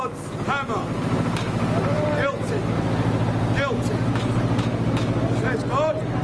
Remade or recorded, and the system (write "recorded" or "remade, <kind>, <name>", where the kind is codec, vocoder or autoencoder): recorded